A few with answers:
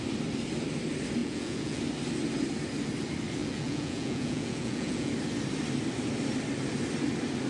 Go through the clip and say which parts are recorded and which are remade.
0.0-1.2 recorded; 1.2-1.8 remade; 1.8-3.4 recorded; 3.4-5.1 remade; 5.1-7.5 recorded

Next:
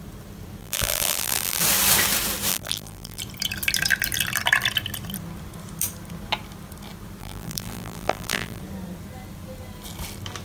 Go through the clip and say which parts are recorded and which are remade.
0.0-0.6 recorded; 0.6-1.6 remade; 1.6-2.5 recorded; 2.5-3.2 remade; 3.2-7.2 recorded; 7.2-8.6 remade; 8.6-10.4 recorded

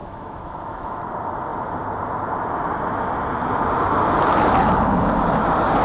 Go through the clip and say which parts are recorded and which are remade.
0.0-1.0 remade; 1.0-5.8 recorded